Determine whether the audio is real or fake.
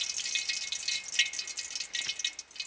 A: real